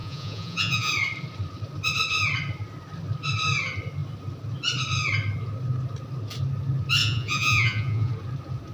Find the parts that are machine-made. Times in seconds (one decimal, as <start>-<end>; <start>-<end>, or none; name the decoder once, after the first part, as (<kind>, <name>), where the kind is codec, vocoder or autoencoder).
0.0-0.9 (vocoder, Vocos); 7.0-8.1